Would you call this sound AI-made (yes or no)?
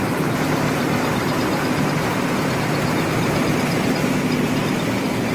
no